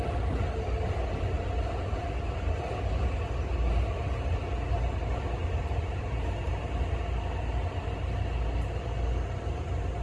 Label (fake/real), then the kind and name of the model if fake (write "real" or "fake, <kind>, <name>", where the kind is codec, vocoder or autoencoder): real